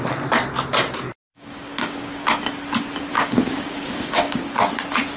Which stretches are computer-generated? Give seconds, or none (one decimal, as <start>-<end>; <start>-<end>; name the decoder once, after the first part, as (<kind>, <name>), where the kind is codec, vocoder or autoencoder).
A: 1.3-2.4 (codec, DAC); 3.1-4.5